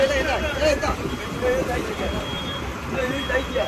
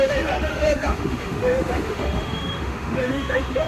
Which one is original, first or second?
first